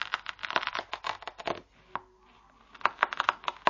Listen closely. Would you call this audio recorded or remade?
recorded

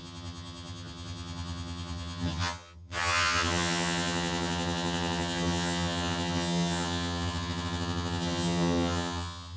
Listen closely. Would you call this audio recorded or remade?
remade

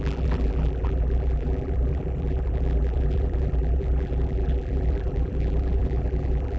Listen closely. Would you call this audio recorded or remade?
remade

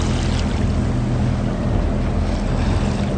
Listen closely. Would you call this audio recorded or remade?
recorded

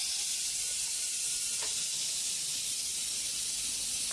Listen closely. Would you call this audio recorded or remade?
recorded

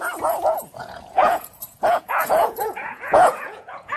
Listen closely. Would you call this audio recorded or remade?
remade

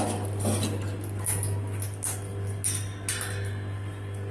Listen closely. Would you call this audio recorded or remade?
recorded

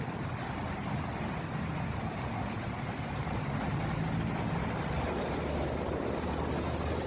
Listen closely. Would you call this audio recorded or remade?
recorded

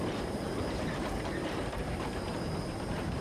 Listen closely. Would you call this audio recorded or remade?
remade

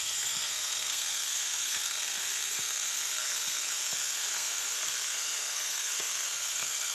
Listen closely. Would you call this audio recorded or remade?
remade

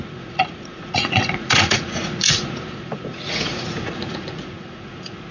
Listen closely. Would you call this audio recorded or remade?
remade